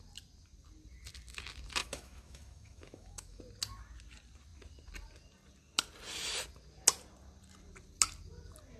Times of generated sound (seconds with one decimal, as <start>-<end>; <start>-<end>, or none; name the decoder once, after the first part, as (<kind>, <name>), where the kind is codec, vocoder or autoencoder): 1.8-3.4 (autoencoder, DAC-VAE)